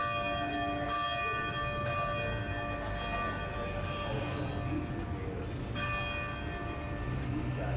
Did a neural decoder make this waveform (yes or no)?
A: no